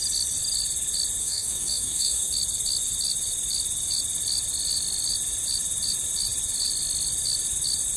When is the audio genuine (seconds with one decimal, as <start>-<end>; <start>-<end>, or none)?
0.0-1.2; 2.3-8.0